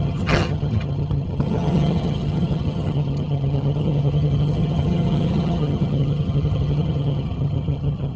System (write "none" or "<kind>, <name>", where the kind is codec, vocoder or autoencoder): vocoder, HiFi-GAN